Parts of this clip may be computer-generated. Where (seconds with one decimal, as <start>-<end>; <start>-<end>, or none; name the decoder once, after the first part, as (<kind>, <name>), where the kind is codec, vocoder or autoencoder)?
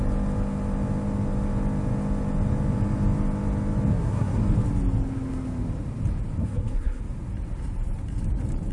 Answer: 3.9-4.4 (codec, SNAC); 6.4-7.0